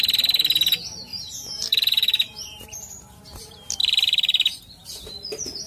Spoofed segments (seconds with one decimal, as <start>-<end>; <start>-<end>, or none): 1.1-3.2; 3.8-4.6